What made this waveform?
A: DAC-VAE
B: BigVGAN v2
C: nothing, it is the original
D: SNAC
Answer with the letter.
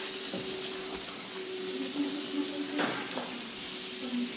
C